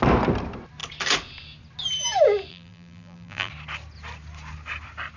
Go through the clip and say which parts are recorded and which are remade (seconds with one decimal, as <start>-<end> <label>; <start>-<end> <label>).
0.0-2.5 recorded; 2.5-3.5 remade; 3.5-5.2 recorded